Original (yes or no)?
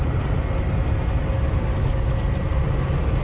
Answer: yes